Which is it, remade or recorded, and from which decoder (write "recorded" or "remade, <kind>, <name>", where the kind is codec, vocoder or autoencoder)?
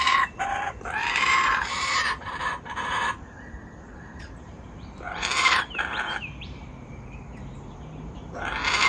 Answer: remade, vocoder, BigVGAN v2